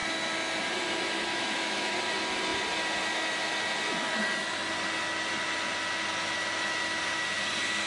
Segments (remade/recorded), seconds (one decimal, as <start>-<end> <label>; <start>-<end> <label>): 0.0-1.3 recorded; 1.3-1.9 remade; 1.9-7.9 recorded